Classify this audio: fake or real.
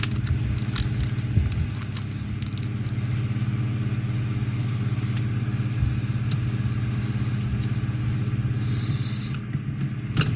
real